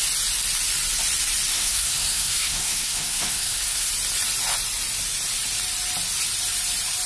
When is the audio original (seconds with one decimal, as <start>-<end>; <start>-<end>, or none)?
0.0-1.5; 3.9-7.1